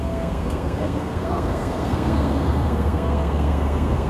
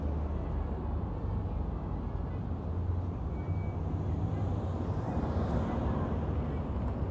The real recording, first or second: second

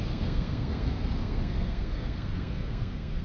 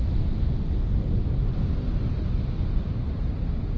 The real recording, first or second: second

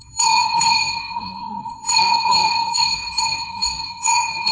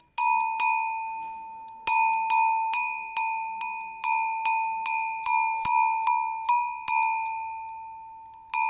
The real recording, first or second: second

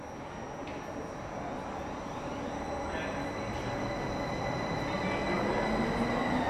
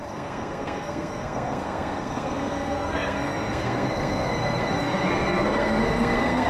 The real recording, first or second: first